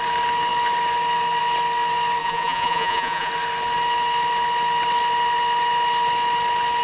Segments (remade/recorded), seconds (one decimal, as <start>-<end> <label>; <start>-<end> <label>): 0.0-2.2 recorded; 2.2-3.3 remade; 3.3-6.8 recorded